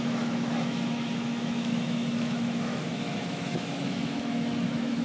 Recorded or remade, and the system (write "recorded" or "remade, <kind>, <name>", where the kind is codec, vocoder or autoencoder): remade, autoencoder, DAC-VAE